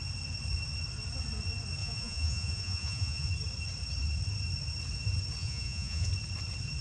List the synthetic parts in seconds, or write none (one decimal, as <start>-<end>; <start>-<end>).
1.8-3.3; 5.4-6.1